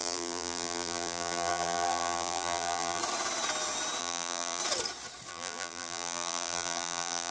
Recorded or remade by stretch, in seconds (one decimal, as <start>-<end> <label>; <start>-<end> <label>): 0.0-3.0 remade; 3.0-4.0 recorded; 4.0-4.6 remade; 4.6-5.3 recorded; 5.3-7.3 remade